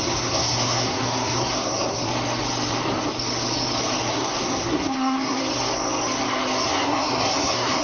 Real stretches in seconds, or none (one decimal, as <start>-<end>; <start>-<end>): 2.1-4.1; 5.4-6.7